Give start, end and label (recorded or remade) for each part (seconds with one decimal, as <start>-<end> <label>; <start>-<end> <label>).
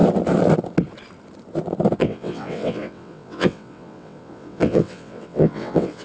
0.0-2.0 recorded; 2.0-6.0 remade